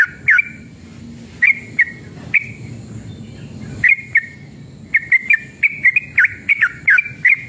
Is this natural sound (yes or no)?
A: yes